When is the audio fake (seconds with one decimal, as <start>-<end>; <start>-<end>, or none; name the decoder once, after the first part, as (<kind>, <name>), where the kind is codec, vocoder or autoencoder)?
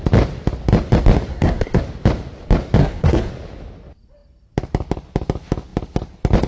1.3-1.8 (codec, SNAC); 2.8-3.3